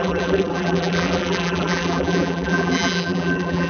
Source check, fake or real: fake